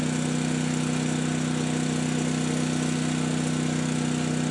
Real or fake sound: real